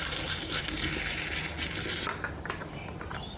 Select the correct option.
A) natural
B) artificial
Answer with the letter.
A